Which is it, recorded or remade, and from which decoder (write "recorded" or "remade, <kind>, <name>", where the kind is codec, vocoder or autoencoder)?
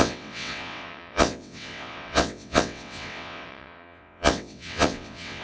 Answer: remade, vocoder, WaveNeXt